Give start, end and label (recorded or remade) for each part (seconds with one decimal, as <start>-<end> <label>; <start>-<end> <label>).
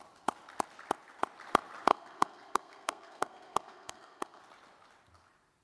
0.0-1.9 recorded; 1.9-4.4 remade; 4.4-5.6 recorded